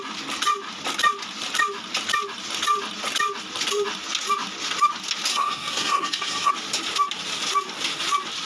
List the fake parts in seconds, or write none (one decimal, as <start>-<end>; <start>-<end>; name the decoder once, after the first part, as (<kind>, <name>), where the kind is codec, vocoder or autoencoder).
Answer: 5.3-6.5 (codec, SNAC)